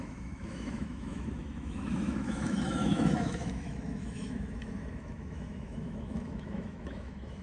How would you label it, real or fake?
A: fake